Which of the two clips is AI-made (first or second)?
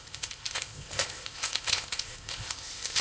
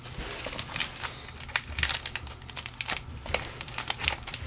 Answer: first